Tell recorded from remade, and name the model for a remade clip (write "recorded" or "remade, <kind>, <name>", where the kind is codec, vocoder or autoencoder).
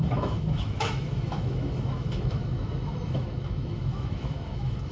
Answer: remade, autoencoder, DAC-VAE